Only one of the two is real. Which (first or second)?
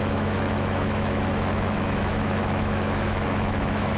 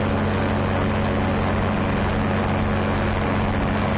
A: second